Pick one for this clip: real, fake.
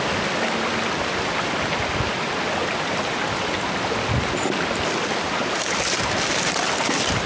real